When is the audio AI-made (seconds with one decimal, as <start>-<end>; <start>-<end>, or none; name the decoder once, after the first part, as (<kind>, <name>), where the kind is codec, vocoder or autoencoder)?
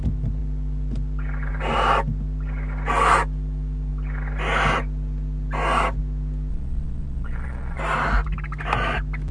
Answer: 6.5-7.8 (vocoder, Vocos)